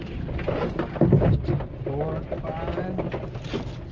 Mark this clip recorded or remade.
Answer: recorded